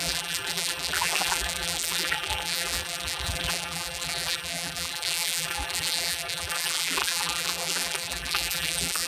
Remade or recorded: remade